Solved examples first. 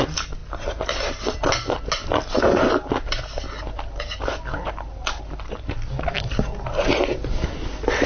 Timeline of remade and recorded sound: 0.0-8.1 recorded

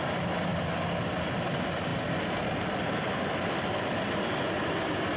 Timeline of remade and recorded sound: 0.0-5.2 recorded

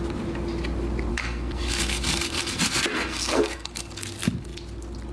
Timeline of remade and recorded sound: 0.0-1.1 recorded; 1.1-4.0 remade; 4.0-5.1 recorded

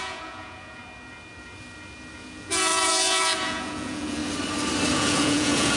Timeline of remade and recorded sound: 0.0-0.8 remade; 0.8-2.1 recorded; 2.1-4.2 remade; 4.2-4.9 recorded; 4.9-5.8 remade

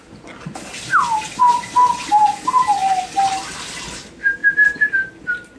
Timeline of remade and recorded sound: 0.0-1.4 recorded; 1.4-2.2 remade; 2.2-5.6 recorded